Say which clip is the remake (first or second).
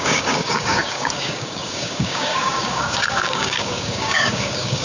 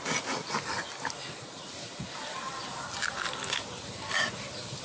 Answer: first